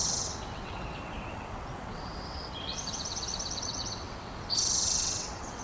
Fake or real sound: fake